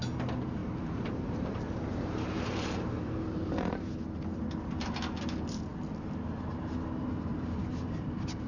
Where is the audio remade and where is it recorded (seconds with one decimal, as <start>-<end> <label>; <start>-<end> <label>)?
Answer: 0.0-0.6 recorded; 0.6-4.0 remade; 4.0-7.3 recorded; 7.3-8.5 remade